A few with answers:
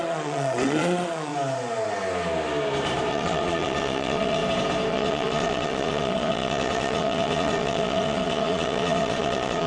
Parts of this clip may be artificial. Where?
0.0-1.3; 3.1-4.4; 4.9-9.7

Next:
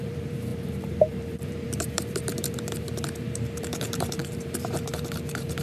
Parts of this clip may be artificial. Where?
0.0-5.6

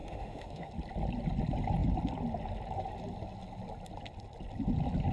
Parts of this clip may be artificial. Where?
0.0-0.7

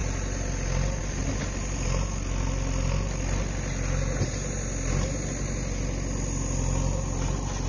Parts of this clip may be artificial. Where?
none

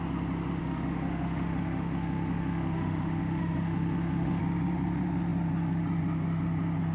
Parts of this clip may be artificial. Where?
0.6-4.4